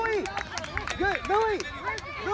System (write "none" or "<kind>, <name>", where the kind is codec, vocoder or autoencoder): none